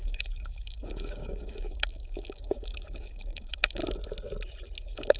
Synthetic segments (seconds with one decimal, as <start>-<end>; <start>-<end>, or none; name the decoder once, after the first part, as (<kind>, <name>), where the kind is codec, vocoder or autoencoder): 0.0-3.8 (codec, DAC); 4.8-5.2